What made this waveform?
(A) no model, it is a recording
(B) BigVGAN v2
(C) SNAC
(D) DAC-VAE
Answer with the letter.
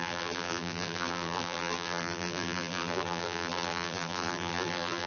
B